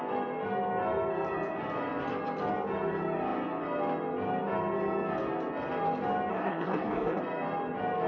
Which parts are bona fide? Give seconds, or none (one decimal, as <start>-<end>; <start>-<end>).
0.0-6.3; 7.2-8.1